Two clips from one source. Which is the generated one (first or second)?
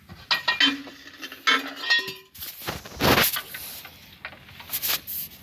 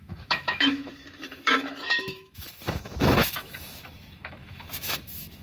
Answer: second